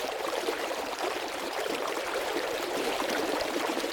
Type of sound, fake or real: fake